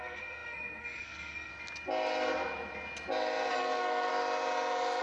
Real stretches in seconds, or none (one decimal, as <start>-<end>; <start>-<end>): 1.5-3.5; 4.1-5.0